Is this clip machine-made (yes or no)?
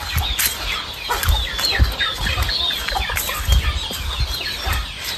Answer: no